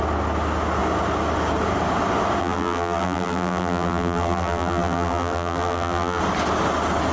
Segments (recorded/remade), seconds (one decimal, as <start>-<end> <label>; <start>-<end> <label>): 0.0-2.4 recorded; 2.4-6.2 remade; 6.2-7.1 recorded